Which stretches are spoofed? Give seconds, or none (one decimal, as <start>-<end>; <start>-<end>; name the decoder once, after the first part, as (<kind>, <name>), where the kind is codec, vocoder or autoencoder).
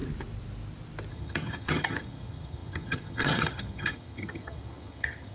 1.1-5.3 (vocoder, HiFi-GAN)